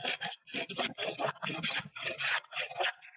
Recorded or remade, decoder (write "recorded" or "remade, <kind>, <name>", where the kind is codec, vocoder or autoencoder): recorded